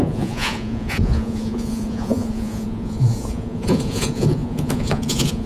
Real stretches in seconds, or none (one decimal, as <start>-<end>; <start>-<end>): none